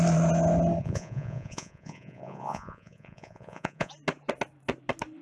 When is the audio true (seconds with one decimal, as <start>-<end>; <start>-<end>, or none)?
0.0-0.8; 3.9-5.2